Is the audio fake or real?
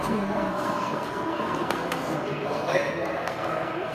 fake